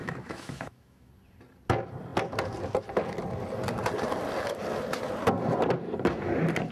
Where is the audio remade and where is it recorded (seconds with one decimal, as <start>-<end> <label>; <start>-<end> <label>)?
0.0-1.1 remade; 1.1-6.7 recorded